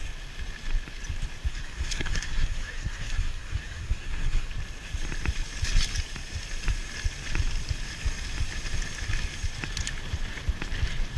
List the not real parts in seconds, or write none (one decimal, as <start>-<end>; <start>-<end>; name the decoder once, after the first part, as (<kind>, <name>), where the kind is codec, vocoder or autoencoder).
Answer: 1.5-4.5 (codec, SNAC)